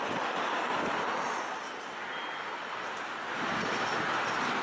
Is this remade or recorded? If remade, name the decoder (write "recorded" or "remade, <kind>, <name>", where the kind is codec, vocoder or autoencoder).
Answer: recorded